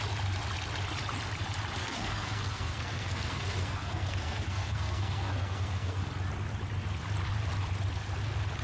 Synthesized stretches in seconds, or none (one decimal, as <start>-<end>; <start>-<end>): 1.8-6.0